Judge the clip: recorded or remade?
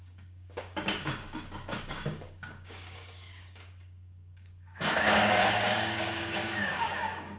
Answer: remade